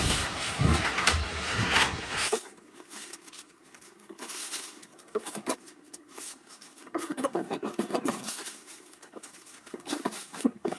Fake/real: fake